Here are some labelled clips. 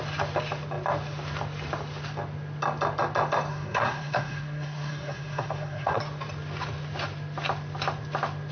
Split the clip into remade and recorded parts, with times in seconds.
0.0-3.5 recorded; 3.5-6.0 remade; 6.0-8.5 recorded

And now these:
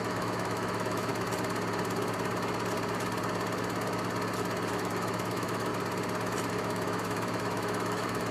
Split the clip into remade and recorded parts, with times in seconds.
0.0-1.1 remade; 1.1-4.7 recorded; 4.7-5.7 remade; 5.7-6.5 recorded; 6.5-8.3 remade

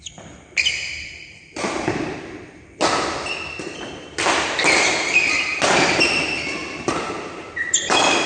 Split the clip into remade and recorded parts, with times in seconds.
0.0-8.3 recorded

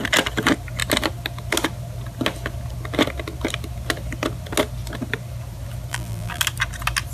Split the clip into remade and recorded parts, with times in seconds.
0.0-5.9 recorded; 5.9-6.4 remade; 6.4-7.1 recorded

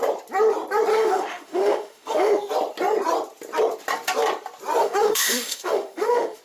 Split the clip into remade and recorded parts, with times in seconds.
0.0-0.9 recorded; 0.9-2.5 remade; 2.5-4.8 recorded; 4.8-6.4 remade

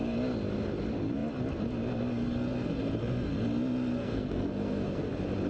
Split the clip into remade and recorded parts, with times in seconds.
0.0-4.0 recorded; 4.0-5.1 remade; 5.1-5.5 recorded

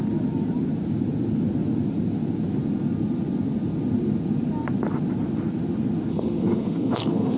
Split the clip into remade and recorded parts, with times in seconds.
0.0-6.1 recorded; 6.1-7.4 remade